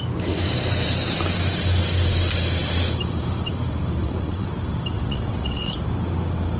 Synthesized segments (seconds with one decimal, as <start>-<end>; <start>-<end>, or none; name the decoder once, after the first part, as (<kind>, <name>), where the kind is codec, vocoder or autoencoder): 4.0-4.5 (vocoder, WaveNeXt); 4.9-5.8